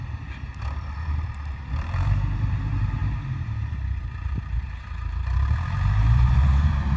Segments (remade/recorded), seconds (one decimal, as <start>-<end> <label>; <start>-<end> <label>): 0.0-7.0 remade

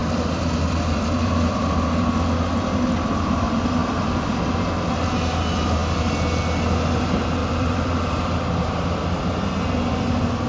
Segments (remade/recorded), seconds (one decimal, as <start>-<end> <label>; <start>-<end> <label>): 0.0-2.1 remade; 2.1-3.8 recorded; 3.8-4.5 remade; 4.5-7.4 recorded; 7.4-9.0 remade; 9.0-10.5 recorded

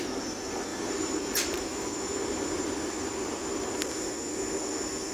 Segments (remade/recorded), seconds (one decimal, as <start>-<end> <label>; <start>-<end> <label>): 0.0-0.7 recorded; 0.7-3.1 remade; 3.1-5.1 recorded